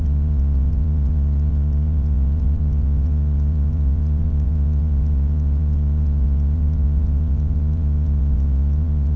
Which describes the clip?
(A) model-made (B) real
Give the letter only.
A